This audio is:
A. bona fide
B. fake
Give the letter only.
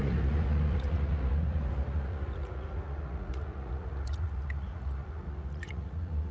B